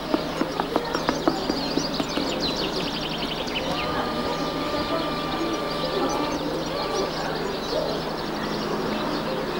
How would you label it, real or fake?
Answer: real